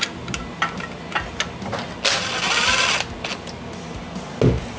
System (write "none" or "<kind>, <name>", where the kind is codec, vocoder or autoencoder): none